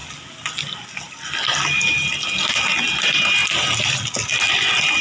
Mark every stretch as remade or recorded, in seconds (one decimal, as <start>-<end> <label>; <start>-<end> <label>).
0.0-3.0 recorded; 3.0-3.4 remade; 3.4-5.0 recorded